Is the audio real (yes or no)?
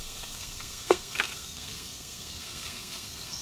no